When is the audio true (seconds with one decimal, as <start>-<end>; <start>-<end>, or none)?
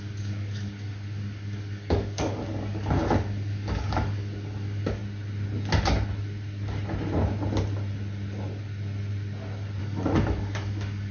5.0-9.8